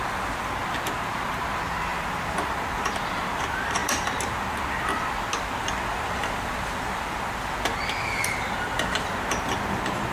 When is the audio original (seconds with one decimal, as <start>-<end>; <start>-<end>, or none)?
0.0-10.1